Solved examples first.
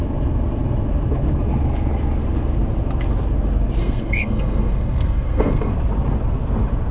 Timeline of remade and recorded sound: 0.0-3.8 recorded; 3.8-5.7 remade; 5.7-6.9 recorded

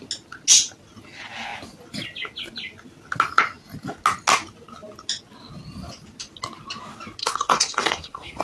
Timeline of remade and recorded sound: 0.0-7.2 recorded; 7.2-8.4 remade

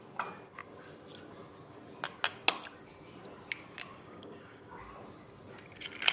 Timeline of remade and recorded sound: 0.0-3.9 recorded; 3.9-4.8 remade; 4.8-6.1 recorded

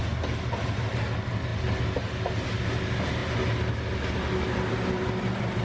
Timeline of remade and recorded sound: 0.0-5.6 recorded